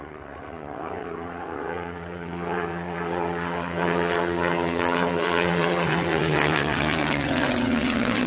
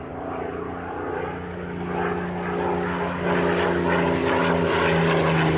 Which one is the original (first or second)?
second